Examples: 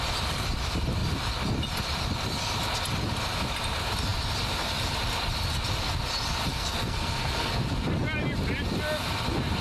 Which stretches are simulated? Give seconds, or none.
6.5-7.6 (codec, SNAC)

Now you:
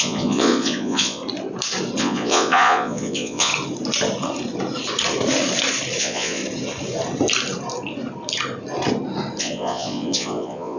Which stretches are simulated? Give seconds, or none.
0.0-1.2 (vocoder, Vocos); 2.0-3.5; 6.0-6.4; 9.4-10.8

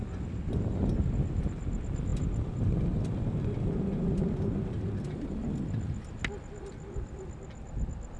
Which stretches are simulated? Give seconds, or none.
2.1-3.1 (vocoder, BigVGAN v2)

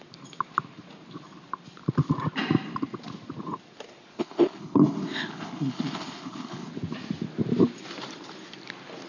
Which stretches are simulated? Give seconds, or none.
4.2-6.7 (codec, HILCodec)

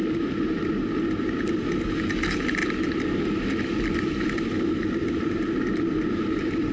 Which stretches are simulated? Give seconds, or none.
2.6-6.7 (vocoder, BigVGAN v2)

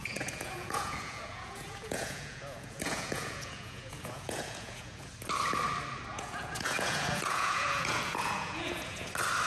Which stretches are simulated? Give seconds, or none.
0.0-5.1 (vocoder, Vocos); 6.1-9.1

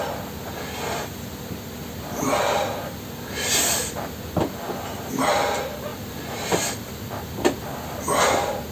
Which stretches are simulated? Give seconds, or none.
none

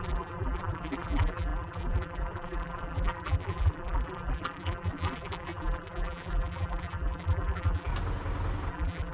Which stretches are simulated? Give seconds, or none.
0.0-7.9 (vocoder, BigVGAN v2); 8.7-9.1